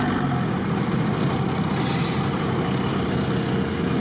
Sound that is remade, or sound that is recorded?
recorded